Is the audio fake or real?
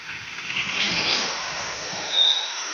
fake